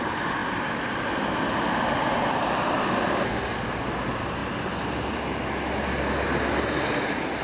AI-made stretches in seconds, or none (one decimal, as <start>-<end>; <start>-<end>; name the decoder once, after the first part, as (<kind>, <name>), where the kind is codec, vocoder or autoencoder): none